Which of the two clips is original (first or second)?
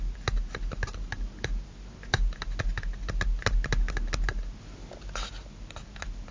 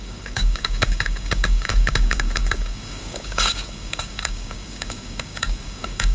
first